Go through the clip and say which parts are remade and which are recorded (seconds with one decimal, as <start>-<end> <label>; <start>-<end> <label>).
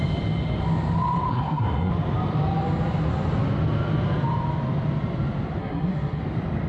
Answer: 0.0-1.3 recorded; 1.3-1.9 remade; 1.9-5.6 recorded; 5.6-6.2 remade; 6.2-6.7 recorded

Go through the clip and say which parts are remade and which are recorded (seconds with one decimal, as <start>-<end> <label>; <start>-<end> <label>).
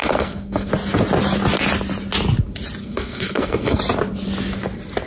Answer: 0.0-0.7 remade; 0.7-2.8 recorded; 2.8-3.8 remade; 3.8-5.1 recorded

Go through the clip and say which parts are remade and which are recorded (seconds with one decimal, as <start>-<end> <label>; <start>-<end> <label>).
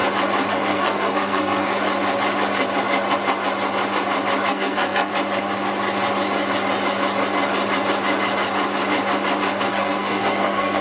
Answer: 0.0-0.5 recorded; 0.5-1.7 remade; 1.7-4.5 recorded; 4.5-5.1 remade; 5.1-9.7 recorded; 9.7-10.8 remade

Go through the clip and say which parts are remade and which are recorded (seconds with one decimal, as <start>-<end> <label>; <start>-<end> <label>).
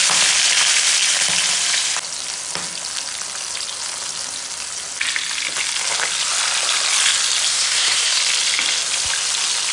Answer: 0.0-7.5 recorded; 7.5-8.2 remade; 8.2-9.7 recorded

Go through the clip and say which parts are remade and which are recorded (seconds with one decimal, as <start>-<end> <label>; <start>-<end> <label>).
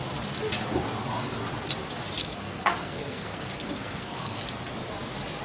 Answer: 0.0-2.2 recorded; 2.2-4.4 remade; 4.4-5.4 recorded